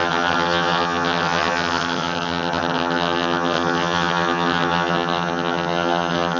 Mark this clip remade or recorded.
remade